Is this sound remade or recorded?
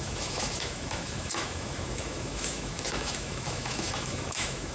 remade